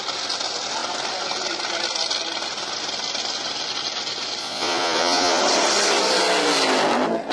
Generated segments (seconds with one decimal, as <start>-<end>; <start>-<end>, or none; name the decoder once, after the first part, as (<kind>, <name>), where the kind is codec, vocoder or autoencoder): 4.4-5.4 (vocoder, Vocos)